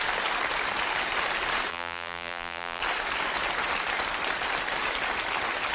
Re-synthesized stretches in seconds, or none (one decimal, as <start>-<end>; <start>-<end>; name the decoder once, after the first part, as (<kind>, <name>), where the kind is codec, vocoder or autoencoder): 1.7-2.8 (vocoder, BigVGAN v2)

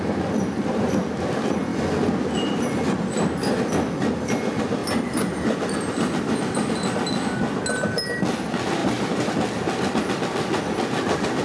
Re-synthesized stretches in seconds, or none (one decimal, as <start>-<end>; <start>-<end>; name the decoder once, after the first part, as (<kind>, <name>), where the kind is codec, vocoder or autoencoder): 8.8-9.3 (vocoder, BigVGAN v2)

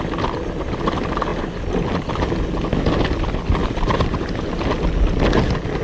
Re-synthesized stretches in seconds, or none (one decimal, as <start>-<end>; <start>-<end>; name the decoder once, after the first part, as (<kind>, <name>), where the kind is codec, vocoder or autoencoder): 3.6-4.5 (vocoder, BigVGAN v2)

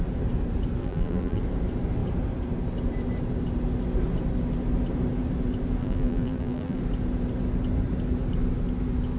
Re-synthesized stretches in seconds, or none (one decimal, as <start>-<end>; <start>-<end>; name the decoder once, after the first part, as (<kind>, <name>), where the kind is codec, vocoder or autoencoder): 0.8-1.4 (vocoder, BigVGAN v2); 5.8-6.8

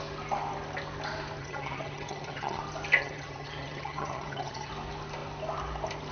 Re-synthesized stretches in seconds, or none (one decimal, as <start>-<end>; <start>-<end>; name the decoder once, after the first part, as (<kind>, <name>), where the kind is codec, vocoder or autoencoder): 1.4-2.6 (vocoder, HiFi-GAN); 3.0-4.7

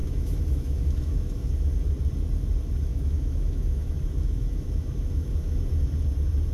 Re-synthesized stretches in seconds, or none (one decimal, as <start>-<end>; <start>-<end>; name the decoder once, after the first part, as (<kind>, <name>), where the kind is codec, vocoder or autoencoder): 0.0-1.5 (autoencoder, DAC-VAE); 2.9-5.7

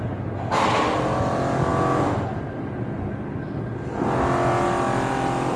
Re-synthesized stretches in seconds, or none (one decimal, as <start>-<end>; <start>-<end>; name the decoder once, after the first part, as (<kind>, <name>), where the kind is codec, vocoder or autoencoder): none